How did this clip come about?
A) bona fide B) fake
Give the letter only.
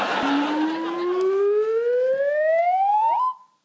A